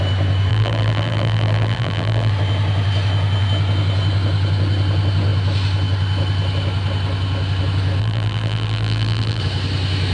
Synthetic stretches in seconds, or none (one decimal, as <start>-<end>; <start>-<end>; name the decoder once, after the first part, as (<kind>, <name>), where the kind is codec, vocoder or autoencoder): 0.5-2.3 (vocoder, BigVGAN v2); 8.0-9.4

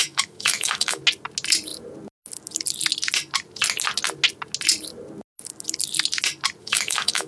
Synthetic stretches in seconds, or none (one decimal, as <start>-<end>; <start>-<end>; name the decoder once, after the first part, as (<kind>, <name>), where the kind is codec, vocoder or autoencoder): 0.0-1.0 (autoencoder, DAC-VAE); 6.6-7.3

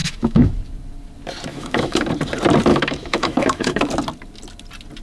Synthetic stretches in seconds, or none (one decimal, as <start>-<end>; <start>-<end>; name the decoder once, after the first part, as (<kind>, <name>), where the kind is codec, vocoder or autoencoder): 0.0-0.5 (autoencoder, DAC-VAE); 1.5-2.1; 2.7-3.9